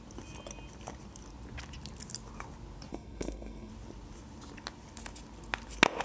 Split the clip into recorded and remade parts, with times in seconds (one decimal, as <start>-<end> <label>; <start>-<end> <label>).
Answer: 0.0-2.9 recorded; 2.9-3.7 remade; 3.7-6.0 recorded